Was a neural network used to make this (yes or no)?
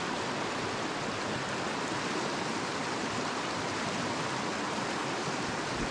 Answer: no